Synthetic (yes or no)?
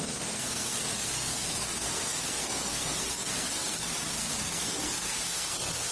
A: yes